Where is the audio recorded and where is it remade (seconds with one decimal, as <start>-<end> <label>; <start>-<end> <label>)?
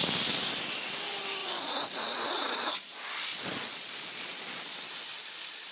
0.0-1.4 recorded; 1.4-4.8 remade; 4.8-5.7 recorded